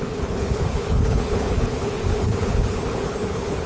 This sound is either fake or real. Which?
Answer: fake